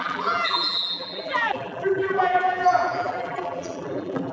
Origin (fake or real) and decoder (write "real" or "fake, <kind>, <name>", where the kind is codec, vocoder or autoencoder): fake, vocoder, BigVGAN v2